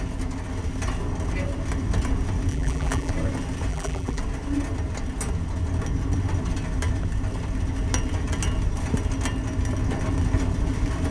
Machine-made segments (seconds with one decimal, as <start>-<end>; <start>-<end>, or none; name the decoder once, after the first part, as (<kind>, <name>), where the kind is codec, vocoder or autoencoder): 2.5-3.1 (vocoder, BigVGAN v2); 3.7-4.2